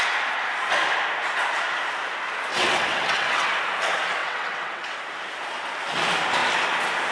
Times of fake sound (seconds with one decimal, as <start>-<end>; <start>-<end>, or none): 2.5-3.5; 4.2-5.0